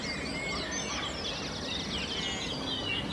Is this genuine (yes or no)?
yes